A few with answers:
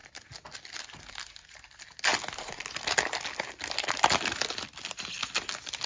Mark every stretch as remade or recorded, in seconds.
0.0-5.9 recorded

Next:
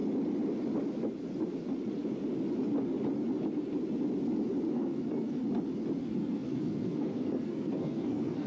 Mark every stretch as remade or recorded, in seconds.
0.0-4.7 recorded; 4.7-5.4 remade; 5.4-6.0 recorded; 6.0-8.5 remade

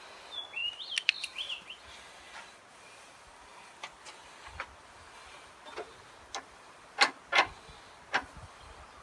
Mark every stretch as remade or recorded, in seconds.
0.0-9.0 recorded

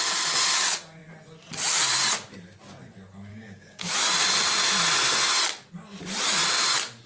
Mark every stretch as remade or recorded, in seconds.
0.0-3.3 recorded; 3.3-3.9 remade; 3.9-7.1 recorded

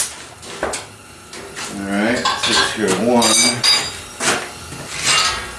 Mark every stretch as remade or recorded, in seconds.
0.0-5.6 recorded

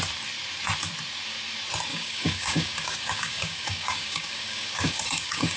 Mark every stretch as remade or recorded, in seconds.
0.0-1.9 recorded; 1.9-5.6 remade